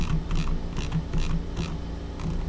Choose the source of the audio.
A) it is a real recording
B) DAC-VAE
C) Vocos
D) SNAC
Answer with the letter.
A